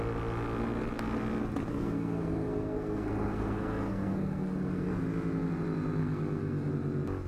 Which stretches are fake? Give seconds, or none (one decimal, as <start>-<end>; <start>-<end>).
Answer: 1.7-4.9; 6.0-6.7